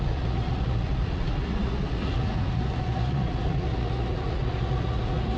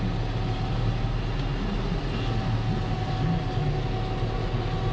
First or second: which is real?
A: second